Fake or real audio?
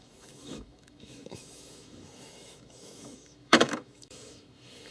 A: fake